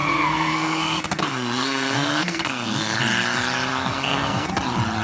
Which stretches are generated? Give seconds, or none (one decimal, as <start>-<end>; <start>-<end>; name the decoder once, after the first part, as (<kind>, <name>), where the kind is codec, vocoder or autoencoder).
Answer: 0.0-3.0 (codec, SNAC); 3.7-4.5